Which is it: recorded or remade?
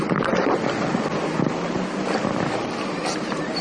remade